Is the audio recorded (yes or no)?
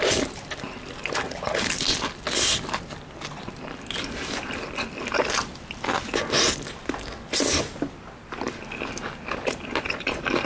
yes